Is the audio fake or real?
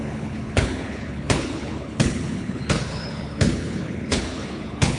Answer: fake